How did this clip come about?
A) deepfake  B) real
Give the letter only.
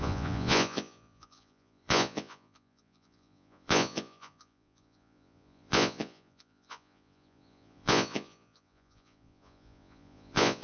A